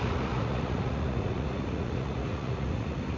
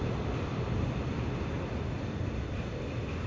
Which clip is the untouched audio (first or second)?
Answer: second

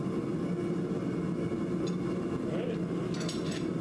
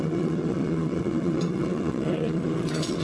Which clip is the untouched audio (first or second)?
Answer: first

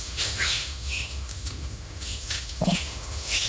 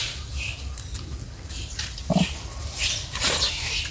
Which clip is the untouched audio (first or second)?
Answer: second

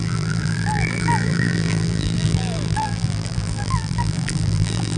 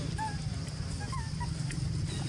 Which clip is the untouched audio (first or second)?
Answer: second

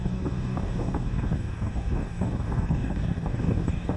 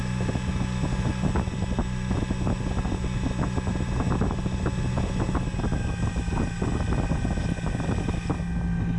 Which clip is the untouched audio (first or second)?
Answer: second